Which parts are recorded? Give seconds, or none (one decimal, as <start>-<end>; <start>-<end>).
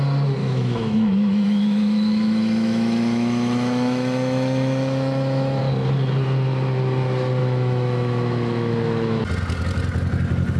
0.0-0.4; 5.6-7.4; 9.2-10.6